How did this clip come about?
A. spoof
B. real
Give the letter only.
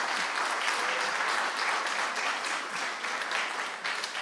B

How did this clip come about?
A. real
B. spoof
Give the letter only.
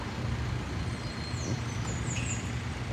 A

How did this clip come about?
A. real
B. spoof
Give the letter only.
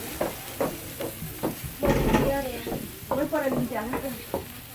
A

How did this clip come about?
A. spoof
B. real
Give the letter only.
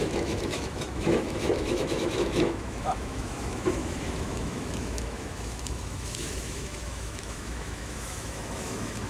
A